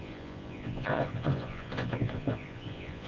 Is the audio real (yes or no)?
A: no